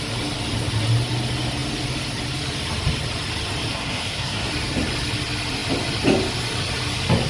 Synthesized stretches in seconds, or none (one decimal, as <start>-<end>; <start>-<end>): 3.7-4.5